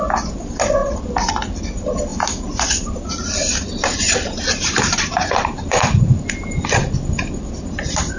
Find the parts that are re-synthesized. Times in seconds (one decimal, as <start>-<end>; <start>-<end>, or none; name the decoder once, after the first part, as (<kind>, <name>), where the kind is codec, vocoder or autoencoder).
2.1-6.1 (vocoder, BigVGAN v2)